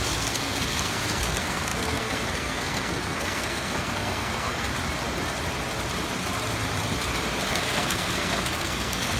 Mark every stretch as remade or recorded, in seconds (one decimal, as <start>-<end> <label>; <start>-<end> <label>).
0.0-4.7 remade; 4.7-7.5 recorded; 7.5-9.2 remade